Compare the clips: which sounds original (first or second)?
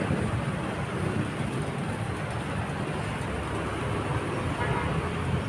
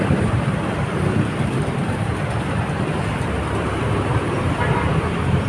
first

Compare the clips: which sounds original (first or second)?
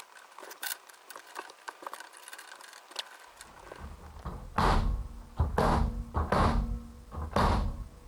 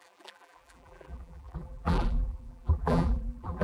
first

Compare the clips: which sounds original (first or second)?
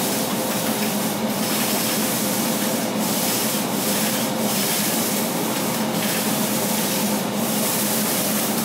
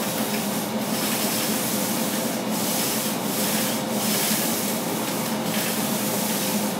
second